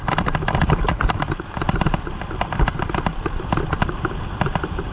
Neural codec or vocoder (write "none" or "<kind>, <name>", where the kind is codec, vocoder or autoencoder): vocoder, BigVGAN v2